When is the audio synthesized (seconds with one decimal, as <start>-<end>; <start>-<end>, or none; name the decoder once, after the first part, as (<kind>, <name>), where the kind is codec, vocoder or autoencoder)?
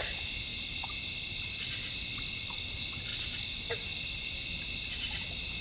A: none